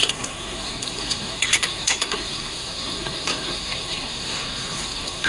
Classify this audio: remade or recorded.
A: remade